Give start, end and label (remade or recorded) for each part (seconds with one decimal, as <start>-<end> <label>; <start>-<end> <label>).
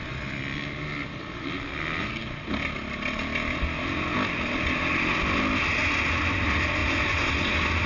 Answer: 0.0-7.9 recorded